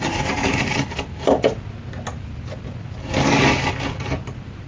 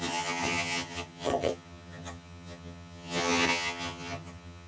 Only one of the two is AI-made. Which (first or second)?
second